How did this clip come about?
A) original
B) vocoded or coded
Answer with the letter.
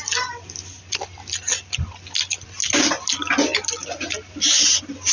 A